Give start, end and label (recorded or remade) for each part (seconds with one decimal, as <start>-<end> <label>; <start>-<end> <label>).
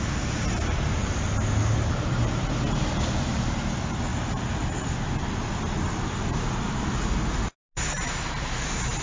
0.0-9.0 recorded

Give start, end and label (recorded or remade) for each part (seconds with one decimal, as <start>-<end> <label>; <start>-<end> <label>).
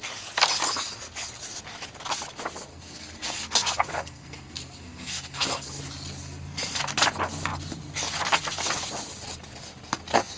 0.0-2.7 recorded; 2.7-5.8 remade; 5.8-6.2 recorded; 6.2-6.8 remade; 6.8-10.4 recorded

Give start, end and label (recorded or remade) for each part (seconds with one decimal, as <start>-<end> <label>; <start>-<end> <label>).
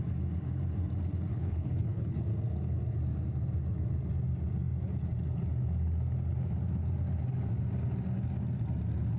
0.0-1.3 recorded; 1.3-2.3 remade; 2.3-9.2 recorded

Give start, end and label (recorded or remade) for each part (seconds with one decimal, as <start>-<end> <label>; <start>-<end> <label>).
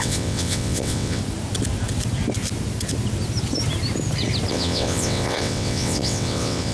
0.0-1.2 remade; 1.2-4.5 recorded; 4.5-6.7 remade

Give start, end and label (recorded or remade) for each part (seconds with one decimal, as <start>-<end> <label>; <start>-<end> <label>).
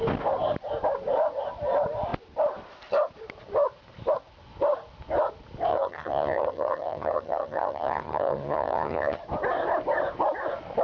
0.0-5.7 recorded; 5.7-9.2 remade; 9.2-10.8 recorded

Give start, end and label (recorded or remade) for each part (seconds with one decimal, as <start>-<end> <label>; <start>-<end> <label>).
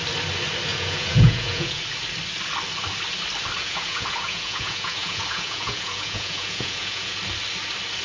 0.0-0.7 recorded; 0.7-1.8 remade; 1.8-3.6 recorded; 3.6-7.2 remade; 7.2-8.0 recorded